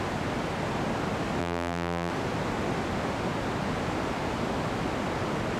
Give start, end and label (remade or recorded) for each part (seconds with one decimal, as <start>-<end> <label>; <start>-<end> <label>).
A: 0.0-1.4 recorded; 1.4-2.1 remade; 2.1-5.6 recorded